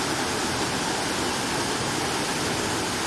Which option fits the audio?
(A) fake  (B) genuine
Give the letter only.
B